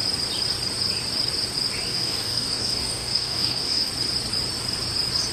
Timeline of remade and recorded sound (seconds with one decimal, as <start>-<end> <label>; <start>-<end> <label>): 0.0-1.9 recorded; 1.9-3.9 remade; 3.9-5.3 recorded